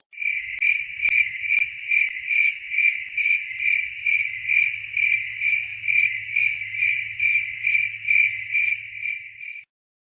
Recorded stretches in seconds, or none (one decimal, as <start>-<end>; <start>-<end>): 0.0-5.7; 7.2-10.1